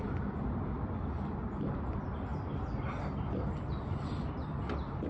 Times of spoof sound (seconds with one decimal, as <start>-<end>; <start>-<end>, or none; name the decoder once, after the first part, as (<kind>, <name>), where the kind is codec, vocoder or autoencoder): none